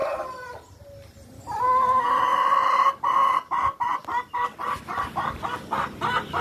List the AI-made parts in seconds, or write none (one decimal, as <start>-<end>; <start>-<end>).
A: 0.0-0.8